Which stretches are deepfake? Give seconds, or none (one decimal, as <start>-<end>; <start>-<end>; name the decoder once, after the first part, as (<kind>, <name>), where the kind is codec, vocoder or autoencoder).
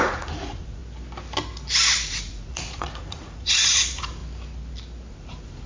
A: 0.0-0.8 (vocoder, Vocos); 2.0-4.2; 5.1-5.7